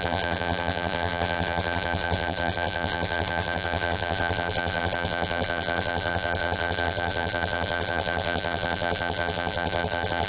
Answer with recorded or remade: remade